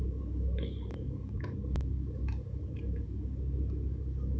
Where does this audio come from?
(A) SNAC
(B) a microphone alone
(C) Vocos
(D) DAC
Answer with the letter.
D